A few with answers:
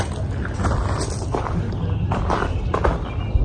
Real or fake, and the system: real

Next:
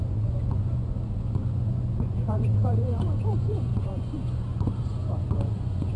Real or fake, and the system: fake, vocoder, Vocos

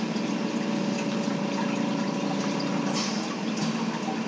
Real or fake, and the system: real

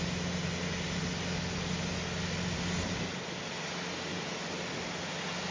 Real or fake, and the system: real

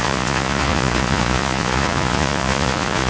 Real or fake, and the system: fake, vocoder, Vocos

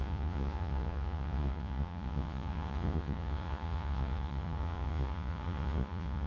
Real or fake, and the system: fake, vocoder, Vocos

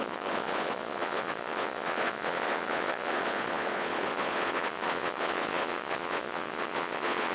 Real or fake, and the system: fake, vocoder, Vocos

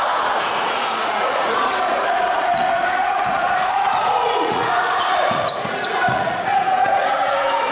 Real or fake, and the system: fake, vocoder, Vocos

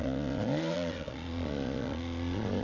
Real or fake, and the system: fake, vocoder, Vocos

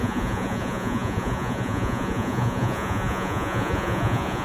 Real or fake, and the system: fake, vocoder, Vocos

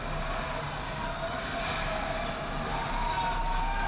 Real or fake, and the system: real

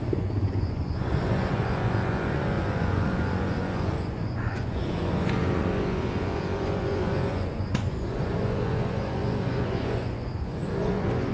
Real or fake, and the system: fake, vocoder, Vocos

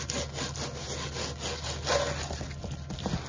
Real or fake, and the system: real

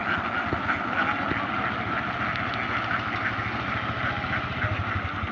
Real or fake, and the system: real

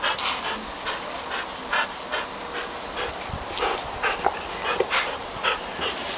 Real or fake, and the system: real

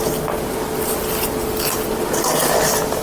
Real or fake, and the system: real